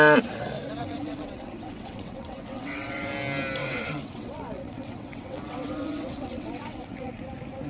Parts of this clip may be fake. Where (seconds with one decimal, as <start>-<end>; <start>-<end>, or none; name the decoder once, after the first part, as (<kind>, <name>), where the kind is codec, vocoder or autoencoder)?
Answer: 0.8-3.1 (vocoder, WaveNeXt); 3.6-7.2